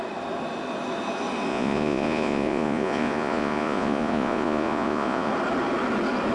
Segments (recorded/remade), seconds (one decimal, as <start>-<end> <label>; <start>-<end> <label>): 0.0-1.5 recorded; 1.5-5.3 remade; 5.3-6.3 recorded